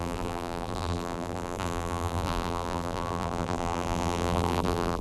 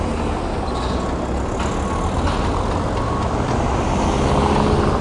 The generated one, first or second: first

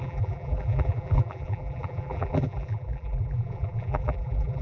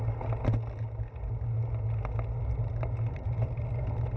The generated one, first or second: first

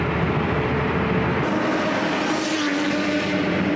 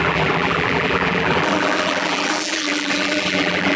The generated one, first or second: second